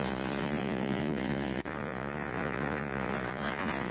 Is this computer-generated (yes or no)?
yes